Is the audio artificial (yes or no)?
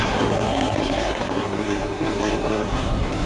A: yes